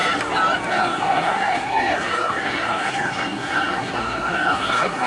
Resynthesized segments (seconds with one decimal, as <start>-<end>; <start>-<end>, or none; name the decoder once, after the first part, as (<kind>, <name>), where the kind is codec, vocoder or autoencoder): 0.7-5.1 (codec, SNAC)